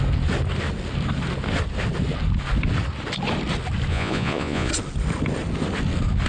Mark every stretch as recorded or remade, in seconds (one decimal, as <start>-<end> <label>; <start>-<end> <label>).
0.0-3.9 recorded; 3.9-4.7 remade; 4.7-6.3 recorded